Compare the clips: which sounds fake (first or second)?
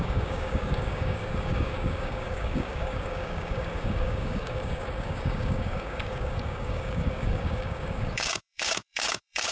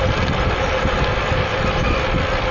first